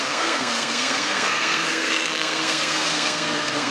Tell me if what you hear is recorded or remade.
remade